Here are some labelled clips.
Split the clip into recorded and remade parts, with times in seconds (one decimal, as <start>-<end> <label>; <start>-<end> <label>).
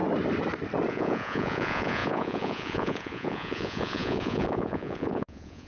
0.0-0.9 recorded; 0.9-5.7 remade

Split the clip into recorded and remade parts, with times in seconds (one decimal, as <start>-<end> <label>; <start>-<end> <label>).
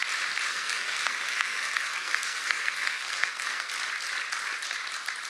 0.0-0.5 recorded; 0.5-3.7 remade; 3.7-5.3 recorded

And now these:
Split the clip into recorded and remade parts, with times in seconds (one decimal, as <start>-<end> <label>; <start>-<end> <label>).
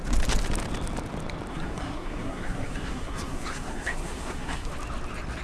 0.0-1.5 recorded; 1.5-4.7 remade; 4.7-5.4 recorded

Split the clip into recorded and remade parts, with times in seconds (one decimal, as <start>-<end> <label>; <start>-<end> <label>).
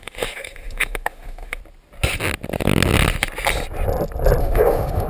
0.0-1.6 remade; 1.6-4.4 recorded; 4.4-5.1 remade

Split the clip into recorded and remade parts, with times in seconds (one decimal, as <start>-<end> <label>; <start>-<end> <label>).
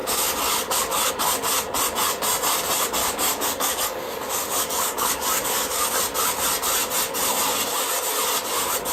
0.0-1.1 remade; 1.1-3.0 recorded; 3.0-5.9 remade; 5.9-8.9 recorded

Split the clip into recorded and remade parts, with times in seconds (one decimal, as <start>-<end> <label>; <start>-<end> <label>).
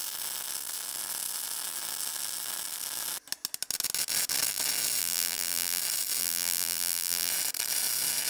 0.0-5.0 recorded; 5.0-5.8 remade; 5.8-6.2 recorded; 6.2-7.3 remade; 7.3-8.3 recorded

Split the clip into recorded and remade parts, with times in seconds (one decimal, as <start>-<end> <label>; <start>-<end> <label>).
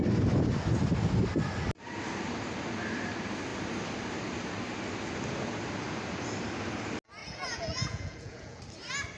0.0-7.2 recorded; 7.2-8.6 remade; 8.6-9.2 recorded